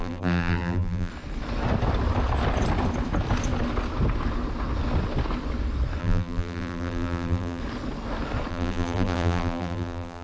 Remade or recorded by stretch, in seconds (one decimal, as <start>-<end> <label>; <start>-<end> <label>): 0.0-1.1 remade; 1.1-6.0 recorded; 6.0-7.6 remade; 7.6-8.5 recorded; 8.5-10.2 remade

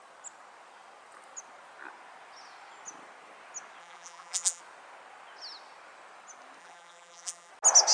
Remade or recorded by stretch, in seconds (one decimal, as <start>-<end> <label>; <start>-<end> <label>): 0.0-3.8 recorded; 3.8-4.6 remade; 4.6-6.6 recorded; 6.6-7.5 remade; 7.5-7.9 recorded

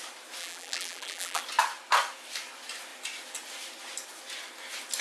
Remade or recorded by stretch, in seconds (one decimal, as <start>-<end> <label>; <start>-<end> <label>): 0.0-0.4 recorded; 0.4-1.4 remade; 1.4-5.0 recorded

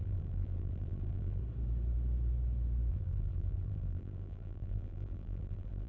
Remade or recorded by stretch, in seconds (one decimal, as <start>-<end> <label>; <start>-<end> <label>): 0.0-1.4 remade; 1.4-2.9 recorded; 2.9-5.9 remade

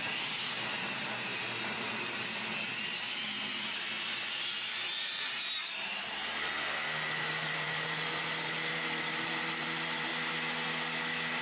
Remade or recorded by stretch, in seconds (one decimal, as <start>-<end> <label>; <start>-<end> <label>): 0.0-6.2 remade; 6.2-7.3 recorded; 7.3-10.1 remade; 10.1-11.4 recorded

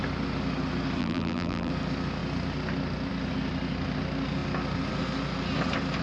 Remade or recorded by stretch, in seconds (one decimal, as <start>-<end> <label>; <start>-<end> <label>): 0.0-1.0 recorded; 1.0-1.7 remade; 1.7-6.0 recorded

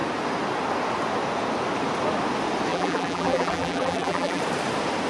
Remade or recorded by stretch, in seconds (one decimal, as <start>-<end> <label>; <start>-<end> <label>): 0.0-2.7 recorded; 2.7-4.4 remade; 4.4-5.1 recorded

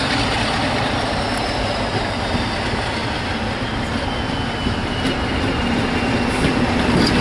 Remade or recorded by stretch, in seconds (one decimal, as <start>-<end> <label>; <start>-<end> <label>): 0.0-3.0 recorded; 3.0-3.6 remade; 3.6-7.2 recorded